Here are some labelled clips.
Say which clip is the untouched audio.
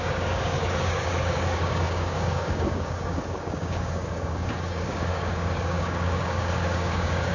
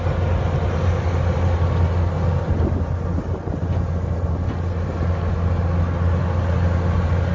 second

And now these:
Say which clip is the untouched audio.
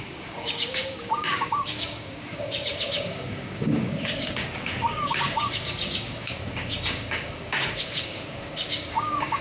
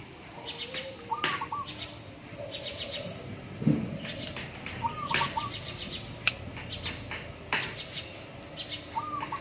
second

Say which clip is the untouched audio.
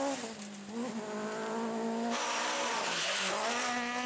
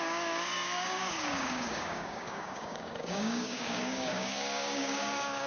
first